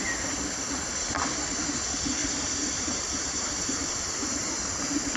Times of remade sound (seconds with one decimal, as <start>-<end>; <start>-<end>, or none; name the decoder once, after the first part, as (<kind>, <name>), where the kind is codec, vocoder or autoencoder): 2.2-4.5 (vocoder, BigVGAN v2)